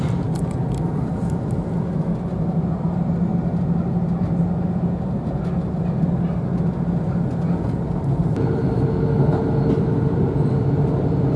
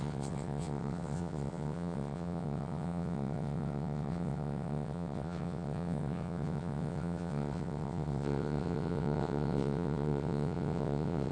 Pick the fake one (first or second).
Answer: second